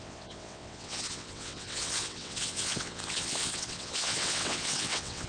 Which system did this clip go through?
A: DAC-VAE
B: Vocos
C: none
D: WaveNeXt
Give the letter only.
D